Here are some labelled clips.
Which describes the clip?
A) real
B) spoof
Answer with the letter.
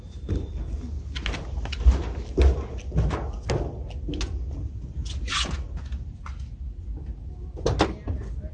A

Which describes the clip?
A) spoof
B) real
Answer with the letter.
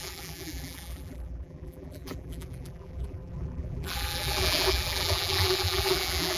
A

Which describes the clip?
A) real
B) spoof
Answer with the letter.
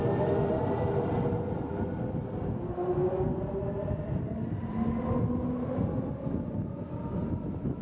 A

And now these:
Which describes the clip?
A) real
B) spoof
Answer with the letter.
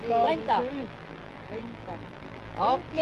B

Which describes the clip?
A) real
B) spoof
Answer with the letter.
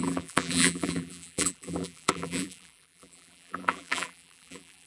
B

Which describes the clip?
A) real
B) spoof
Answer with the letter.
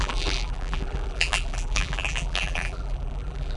B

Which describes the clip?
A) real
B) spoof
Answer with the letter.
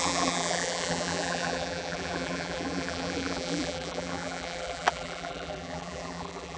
B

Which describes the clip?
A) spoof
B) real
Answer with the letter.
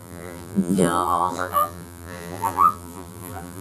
A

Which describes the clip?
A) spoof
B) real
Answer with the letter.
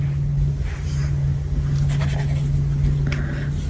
B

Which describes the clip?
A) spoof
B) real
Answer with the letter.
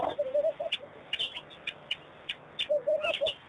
B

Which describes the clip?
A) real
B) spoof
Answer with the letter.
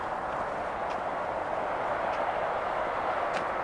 A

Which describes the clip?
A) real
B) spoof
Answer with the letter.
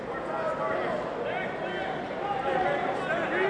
A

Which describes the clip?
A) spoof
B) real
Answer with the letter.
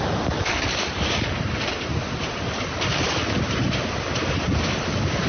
A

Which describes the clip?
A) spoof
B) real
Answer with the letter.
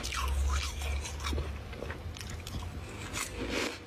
B